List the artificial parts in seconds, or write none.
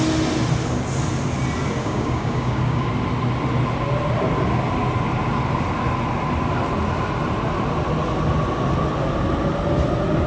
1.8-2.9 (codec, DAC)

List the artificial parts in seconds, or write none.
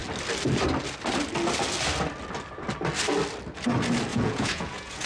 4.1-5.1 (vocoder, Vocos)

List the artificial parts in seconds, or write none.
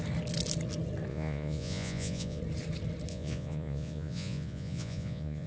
1.1-2.4 (vocoder, Vocos); 3.1-5.5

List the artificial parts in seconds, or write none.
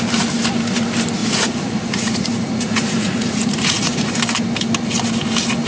1.2-4.1 (vocoder, Vocos)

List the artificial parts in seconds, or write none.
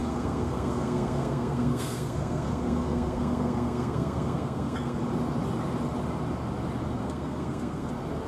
0.0-5.0 (codec, SNAC); 7.0-7.9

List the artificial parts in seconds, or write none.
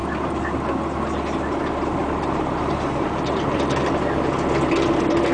2.0-3.1 (vocoder, BigVGAN v2)